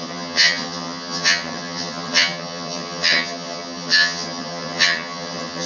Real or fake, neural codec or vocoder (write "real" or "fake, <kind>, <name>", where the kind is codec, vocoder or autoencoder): fake, vocoder, HiFi-GAN